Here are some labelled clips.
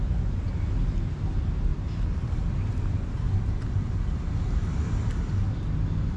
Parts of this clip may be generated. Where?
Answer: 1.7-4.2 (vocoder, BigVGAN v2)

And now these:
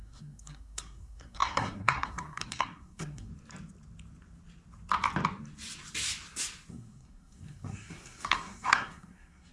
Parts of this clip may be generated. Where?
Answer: 0.0-3.3 (codec, SNAC); 6.7-9.5

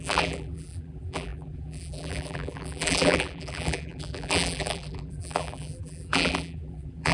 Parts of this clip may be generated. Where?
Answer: 0.0-7.1 (vocoder, BigVGAN v2)

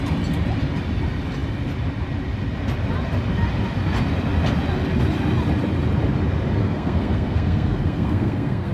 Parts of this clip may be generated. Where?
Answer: 6.6-8.7 (codec, SNAC)